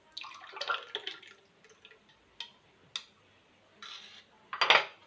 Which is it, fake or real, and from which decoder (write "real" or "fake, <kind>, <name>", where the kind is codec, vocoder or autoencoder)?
real